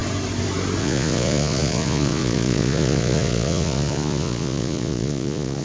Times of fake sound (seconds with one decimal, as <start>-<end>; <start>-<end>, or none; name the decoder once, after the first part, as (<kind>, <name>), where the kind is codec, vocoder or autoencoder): 0.8-5.6 (vocoder, Vocos)